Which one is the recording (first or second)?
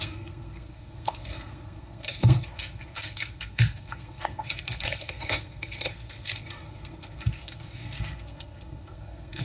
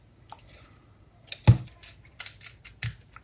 second